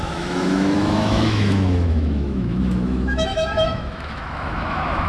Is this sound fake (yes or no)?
yes